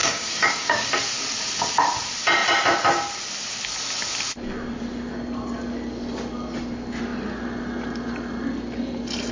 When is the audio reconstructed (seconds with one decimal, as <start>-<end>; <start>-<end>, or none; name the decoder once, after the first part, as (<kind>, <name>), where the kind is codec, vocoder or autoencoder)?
0.0-0.9 (codec, DAC)